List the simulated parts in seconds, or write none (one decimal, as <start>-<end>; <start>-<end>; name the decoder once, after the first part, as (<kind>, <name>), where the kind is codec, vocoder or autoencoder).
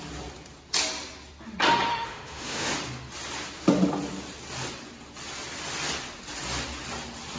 1.9-2.7 (autoencoder, DAC-VAE)